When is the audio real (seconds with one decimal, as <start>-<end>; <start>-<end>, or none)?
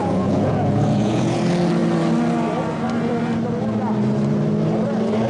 1.4-5.3